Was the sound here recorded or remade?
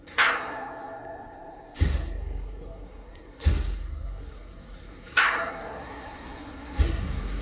remade